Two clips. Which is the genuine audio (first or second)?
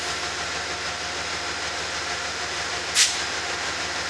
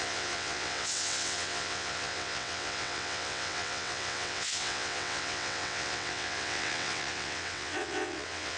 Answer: first